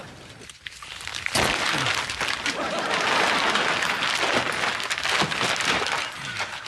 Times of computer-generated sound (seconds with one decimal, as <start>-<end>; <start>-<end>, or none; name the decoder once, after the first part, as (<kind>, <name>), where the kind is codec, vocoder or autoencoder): 0.0-1.1 (vocoder, BigVGAN v2); 5.1-6.7